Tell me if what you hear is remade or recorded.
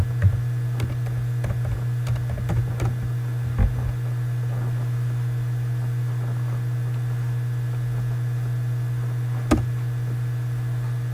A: recorded